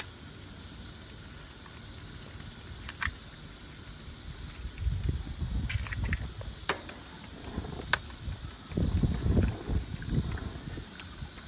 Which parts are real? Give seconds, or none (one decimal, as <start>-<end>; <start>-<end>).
0.0-6.6; 7.9-11.5